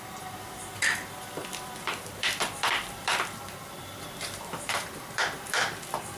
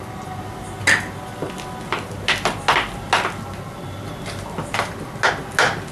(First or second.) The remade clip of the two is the first